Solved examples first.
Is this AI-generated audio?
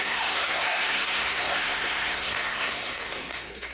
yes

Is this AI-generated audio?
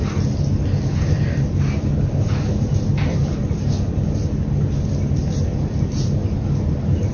no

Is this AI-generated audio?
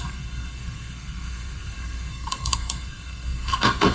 yes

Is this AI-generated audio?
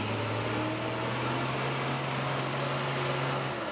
no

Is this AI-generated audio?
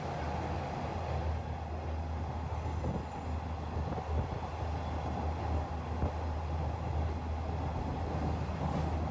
no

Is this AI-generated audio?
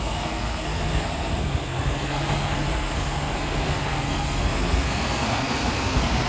yes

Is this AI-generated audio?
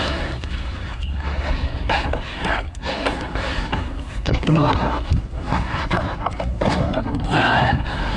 yes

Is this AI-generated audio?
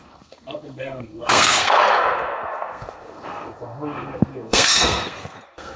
yes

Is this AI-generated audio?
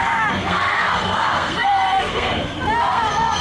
yes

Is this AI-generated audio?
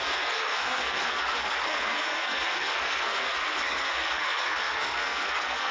yes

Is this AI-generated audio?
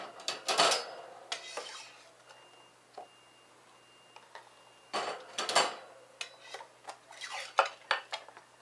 no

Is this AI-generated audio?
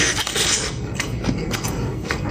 yes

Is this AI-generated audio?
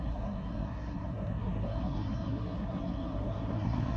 yes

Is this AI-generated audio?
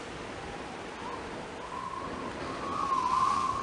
no